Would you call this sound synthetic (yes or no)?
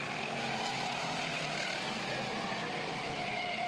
no